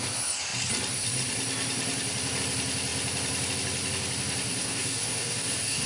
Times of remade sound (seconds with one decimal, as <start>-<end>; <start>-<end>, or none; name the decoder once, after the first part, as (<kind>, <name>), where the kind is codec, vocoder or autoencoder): 4.6-5.9 (codec, DAC)